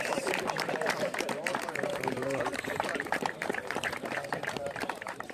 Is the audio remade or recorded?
remade